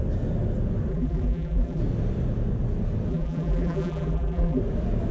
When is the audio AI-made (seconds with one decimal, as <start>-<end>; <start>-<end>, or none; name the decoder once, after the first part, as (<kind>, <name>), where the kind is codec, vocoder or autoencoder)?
0.9-1.8 (vocoder, BigVGAN v2); 3.1-4.6

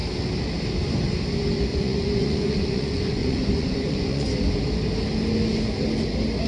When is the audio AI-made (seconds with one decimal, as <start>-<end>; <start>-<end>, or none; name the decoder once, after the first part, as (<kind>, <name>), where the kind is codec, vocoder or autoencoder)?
1.7-4.3 (vocoder, Vocos)